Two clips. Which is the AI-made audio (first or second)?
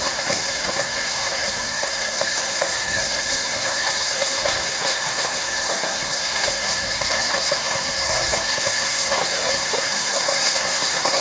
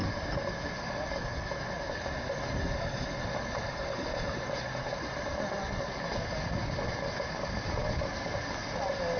first